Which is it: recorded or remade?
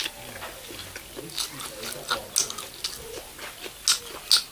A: recorded